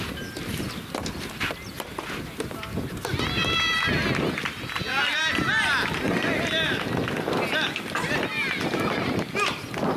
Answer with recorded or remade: recorded